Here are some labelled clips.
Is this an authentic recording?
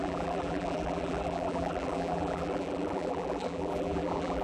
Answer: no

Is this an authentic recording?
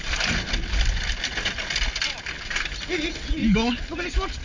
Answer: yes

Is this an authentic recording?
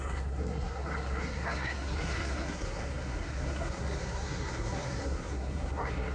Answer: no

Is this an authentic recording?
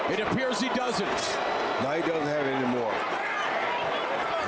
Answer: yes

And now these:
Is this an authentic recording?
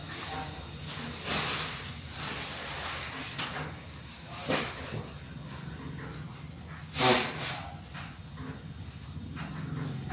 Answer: yes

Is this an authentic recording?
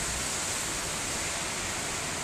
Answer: yes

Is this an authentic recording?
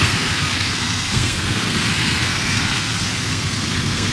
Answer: no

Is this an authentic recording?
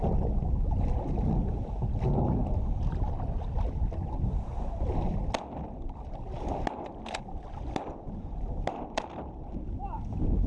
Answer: yes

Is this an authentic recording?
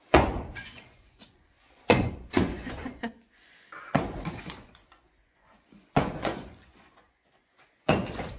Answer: no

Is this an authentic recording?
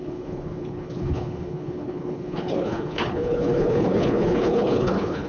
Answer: no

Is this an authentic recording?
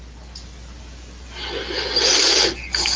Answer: yes